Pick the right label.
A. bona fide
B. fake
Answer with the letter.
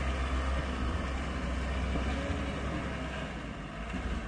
A